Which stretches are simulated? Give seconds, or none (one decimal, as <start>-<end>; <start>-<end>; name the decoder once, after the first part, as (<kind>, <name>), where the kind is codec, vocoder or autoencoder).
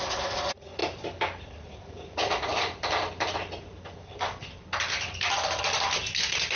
0.0-0.8 (vocoder, Vocos); 1.4-2.5